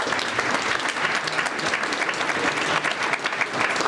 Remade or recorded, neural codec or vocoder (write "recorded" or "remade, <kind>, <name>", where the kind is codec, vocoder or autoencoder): recorded